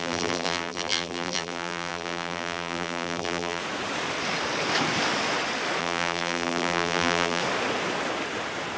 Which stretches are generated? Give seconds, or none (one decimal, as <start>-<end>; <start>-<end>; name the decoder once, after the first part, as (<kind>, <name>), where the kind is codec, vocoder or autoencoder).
0.0-3.6 (vocoder, BigVGAN v2); 5.8-7.4